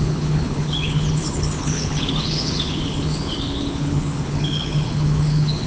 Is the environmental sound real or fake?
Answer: fake